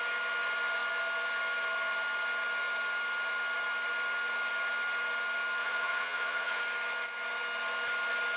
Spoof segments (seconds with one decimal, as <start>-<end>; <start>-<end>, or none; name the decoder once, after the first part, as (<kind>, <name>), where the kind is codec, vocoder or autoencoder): 5.6-6.6 (vocoder, Vocos)